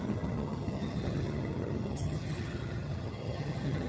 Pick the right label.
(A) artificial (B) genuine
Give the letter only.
A